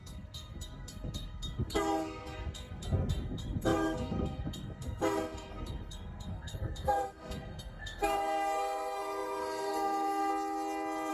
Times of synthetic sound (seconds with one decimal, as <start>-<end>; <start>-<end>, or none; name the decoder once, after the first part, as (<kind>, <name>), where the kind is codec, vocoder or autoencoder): 0.0-10.3 (codec, SNAC)